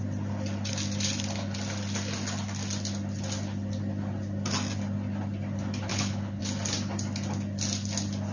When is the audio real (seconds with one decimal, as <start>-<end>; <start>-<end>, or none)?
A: 0.0-5.9; 6.4-8.3